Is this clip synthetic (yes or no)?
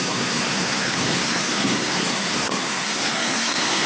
yes